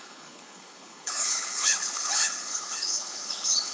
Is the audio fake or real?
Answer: fake